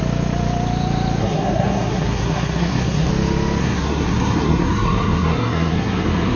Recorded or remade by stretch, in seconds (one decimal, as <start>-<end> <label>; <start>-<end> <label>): 0.0-1.2 recorded; 1.2-3.1 remade; 3.1-3.6 recorded; 3.6-6.4 remade